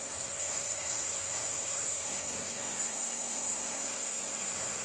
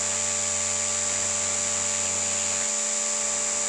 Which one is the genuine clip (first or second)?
second